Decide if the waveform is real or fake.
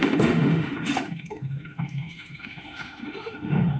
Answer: fake